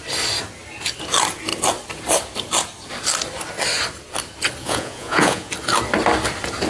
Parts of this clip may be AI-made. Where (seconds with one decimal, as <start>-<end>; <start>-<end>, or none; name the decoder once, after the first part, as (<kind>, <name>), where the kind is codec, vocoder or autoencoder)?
4.6-5.5 (vocoder, Vocos)